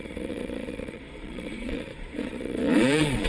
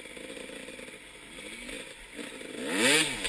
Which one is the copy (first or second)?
first